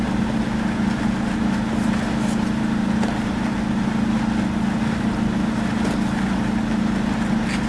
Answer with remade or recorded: recorded